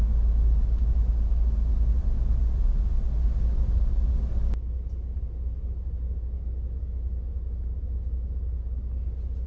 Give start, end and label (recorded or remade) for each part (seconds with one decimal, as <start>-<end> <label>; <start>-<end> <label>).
0.0-9.5 recorded